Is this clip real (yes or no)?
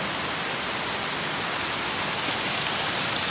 yes